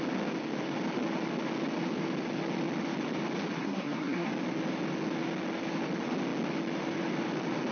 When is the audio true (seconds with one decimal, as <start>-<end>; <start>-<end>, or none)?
0.0-3.6; 4.3-7.7